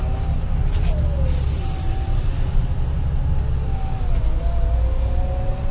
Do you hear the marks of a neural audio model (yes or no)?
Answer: no